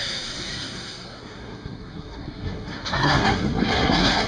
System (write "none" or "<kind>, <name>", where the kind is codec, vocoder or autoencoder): codec, SNAC